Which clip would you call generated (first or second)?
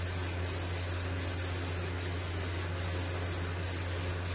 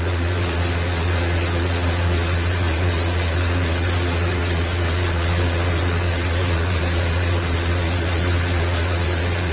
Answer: second